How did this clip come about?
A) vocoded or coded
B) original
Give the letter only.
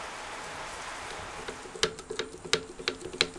B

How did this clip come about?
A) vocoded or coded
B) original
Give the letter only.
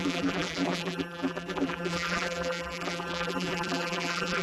A